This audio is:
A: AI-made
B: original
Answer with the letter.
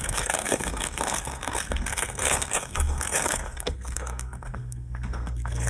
A